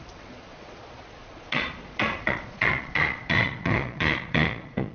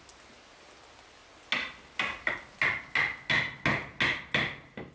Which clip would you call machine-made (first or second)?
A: first